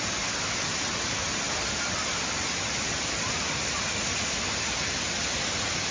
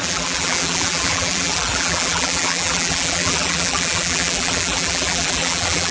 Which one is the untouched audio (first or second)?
first